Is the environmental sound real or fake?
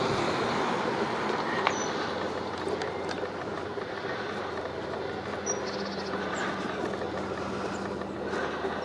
real